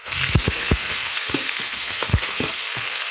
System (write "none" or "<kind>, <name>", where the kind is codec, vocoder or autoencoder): codec, SNAC